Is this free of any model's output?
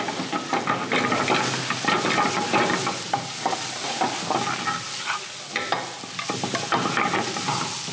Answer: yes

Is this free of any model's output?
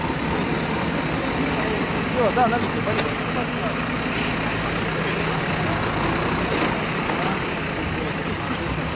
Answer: yes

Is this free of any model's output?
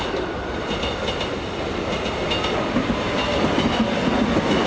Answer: yes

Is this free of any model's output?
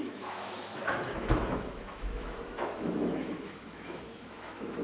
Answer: no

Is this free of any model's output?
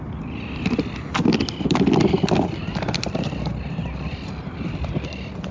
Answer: yes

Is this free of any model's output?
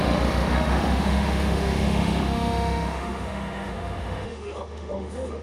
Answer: no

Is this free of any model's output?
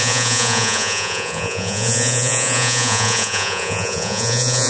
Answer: no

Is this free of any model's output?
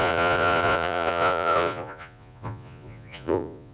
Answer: no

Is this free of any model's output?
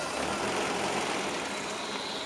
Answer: yes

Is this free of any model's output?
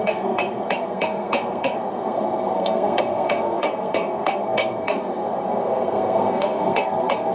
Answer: no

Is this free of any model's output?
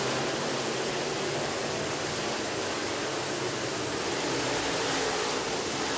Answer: yes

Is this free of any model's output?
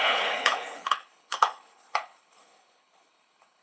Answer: no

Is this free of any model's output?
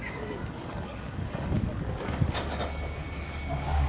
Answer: no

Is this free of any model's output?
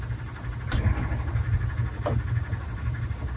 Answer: yes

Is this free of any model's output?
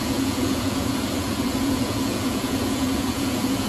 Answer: no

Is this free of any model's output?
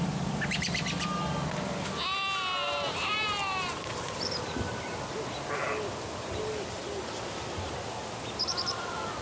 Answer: yes